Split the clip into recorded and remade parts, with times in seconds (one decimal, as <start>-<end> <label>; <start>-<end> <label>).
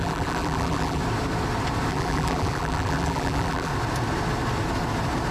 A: 0.0-1.0 remade; 1.0-1.9 recorded; 1.9-3.7 remade; 3.7-5.3 recorded